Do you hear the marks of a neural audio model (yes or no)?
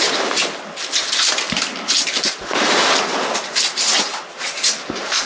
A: no